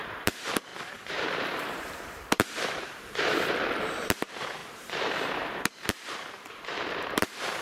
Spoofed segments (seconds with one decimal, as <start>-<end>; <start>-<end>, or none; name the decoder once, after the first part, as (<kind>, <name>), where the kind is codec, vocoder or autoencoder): 0.0-7.6 (vocoder, BigVGAN v2)